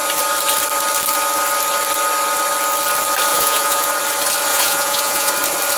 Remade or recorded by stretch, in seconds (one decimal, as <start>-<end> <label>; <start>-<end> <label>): 0.0-3.3 recorded; 3.3-3.9 remade; 3.9-4.5 recorded; 4.5-5.3 remade; 5.3-5.8 recorded